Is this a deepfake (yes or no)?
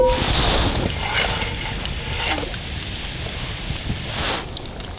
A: no